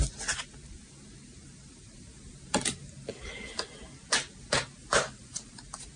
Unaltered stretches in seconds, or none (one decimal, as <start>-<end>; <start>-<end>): 0.0-1.4; 2.9-4.8; 5.5-6.0